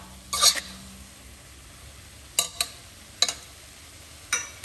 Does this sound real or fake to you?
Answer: real